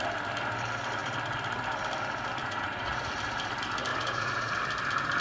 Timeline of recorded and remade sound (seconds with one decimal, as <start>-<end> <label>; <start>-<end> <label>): 0.0-2.4 recorded; 2.4-3.0 remade; 3.0-3.9 recorded; 3.9-4.6 remade; 4.6-5.2 recorded